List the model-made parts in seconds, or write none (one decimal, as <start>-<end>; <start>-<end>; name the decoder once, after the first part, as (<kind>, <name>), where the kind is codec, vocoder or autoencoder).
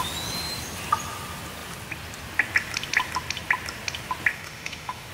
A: 4.3-5.1 (autoencoder, DAC-VAE)